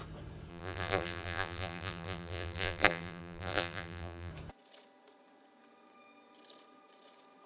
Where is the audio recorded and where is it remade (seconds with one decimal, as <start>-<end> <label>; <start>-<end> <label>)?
0.0-0.5 recorded; 0.5-4.3 remade; 4.3-7.5 recorded